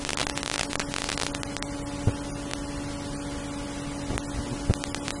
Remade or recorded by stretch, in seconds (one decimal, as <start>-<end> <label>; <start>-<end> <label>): 0.0-5.2 recorded

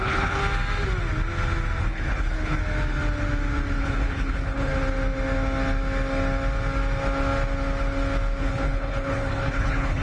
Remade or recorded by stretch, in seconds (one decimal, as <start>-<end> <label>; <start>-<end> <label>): 0.0-0.4 remade; 0.4-1.8 recorded; 1.8-2.6 remade; 2.6-3.8 recorded; 3.8-4.7 remade; 4.7-8.4 recorded; 8.4-10.0 remade